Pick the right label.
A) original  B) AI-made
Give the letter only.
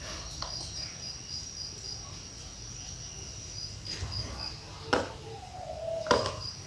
A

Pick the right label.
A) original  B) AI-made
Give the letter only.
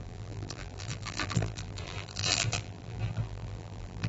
B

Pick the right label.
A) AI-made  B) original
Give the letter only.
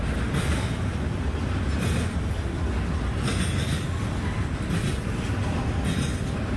B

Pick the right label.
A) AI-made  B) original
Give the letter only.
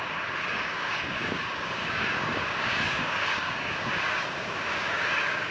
A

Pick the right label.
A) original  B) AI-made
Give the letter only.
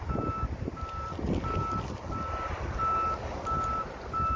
A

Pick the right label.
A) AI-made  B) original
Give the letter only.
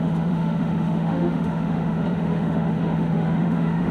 A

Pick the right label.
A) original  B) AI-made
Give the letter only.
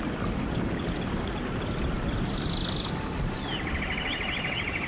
A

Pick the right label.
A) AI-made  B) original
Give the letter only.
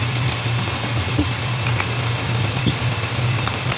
A